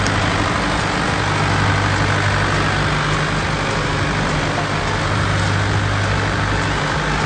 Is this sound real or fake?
real